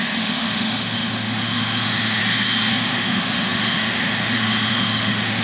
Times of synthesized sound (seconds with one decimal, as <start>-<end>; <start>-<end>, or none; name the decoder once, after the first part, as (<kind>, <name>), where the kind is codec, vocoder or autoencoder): 0.0-2.2 (autoencoder, DAC-VAE); 2.7-5.4